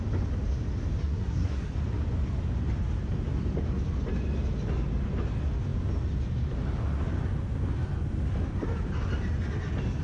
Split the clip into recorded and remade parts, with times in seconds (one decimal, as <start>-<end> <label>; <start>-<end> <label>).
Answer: 0.0-1.0 recorded; 1.0-1.7 remade; 1.7-10.0 recorded